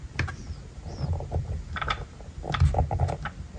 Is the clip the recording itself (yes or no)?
yes